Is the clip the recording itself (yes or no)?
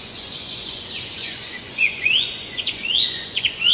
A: no